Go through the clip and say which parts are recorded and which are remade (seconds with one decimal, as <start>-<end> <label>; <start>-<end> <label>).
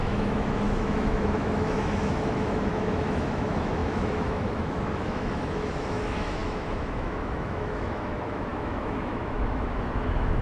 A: 0.0-10.4 remade